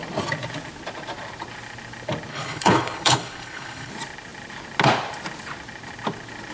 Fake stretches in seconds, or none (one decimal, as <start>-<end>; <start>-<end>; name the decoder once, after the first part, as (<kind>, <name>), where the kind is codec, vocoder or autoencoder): 2.3-3.9 (codec, HILCodec)